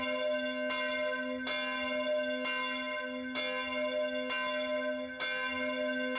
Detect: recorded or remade recorded